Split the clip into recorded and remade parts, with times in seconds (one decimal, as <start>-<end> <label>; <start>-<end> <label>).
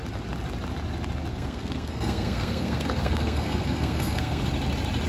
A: 0.0-1.3 recorded; 1.3-4.4 remade; 4.4-5.1 recorded